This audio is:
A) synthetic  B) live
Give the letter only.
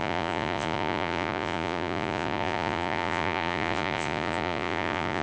A